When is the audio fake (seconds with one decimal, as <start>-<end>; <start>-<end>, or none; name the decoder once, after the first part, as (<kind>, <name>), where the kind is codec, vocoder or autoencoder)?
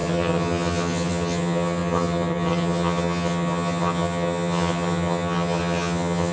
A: 0.0-6.3 (vocoder, HiFi-GAN)